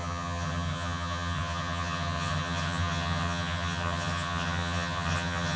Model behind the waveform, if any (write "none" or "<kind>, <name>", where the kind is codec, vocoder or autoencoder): vocoder, HiFi-GAN